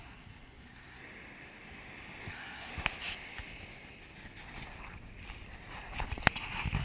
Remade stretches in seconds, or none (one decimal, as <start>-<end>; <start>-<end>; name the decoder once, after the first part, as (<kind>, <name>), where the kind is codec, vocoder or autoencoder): 0.0-1.0 (codec, SNAC); 2.3-2.7